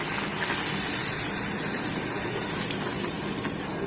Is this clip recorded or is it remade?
recorded